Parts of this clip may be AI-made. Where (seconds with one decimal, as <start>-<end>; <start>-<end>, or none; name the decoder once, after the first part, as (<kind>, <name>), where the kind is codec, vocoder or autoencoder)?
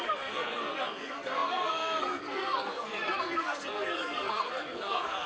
0.0-5.3 (codec, SNAC)